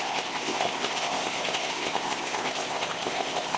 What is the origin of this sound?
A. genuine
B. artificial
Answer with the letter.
B